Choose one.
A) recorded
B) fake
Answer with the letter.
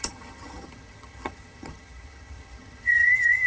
B